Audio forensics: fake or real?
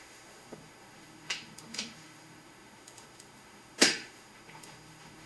fake